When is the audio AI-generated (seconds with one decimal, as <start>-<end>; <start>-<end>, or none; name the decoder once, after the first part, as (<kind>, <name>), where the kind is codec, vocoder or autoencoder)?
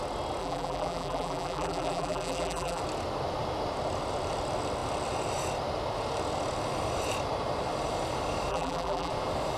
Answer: 0.4-2.8 (vocoder, BigVGAN v2); 8.5-9.1